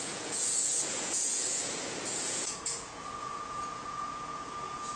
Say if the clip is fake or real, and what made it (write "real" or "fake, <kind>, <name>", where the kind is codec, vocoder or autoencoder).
fake, vocoder, Vocos